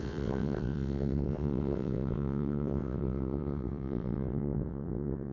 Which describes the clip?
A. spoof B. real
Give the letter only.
A